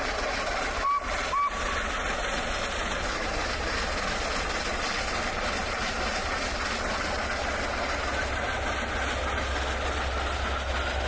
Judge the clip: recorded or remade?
recorded